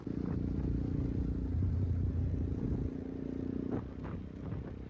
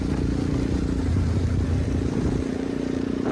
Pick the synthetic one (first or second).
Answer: second